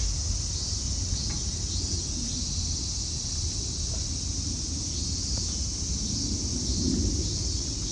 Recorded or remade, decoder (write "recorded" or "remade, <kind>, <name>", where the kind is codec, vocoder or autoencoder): recorded